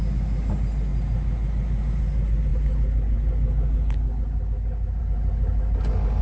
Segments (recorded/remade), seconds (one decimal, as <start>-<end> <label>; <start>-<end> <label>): 0.0-6.2 recorded